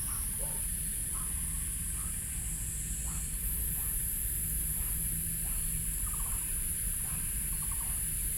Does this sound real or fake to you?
real